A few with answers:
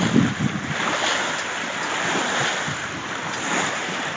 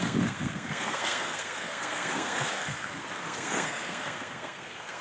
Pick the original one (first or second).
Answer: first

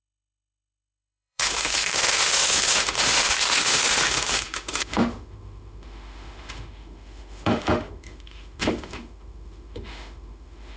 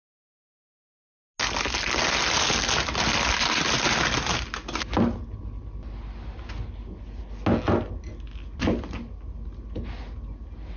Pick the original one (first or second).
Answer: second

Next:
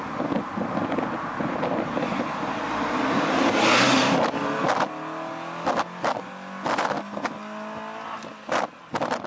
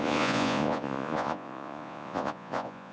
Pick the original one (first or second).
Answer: first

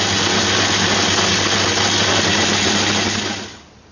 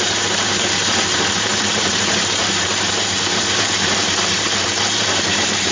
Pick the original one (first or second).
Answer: first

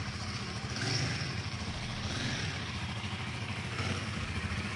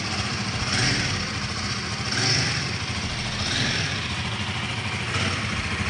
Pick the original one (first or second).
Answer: second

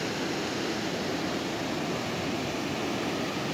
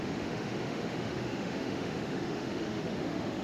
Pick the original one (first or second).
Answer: first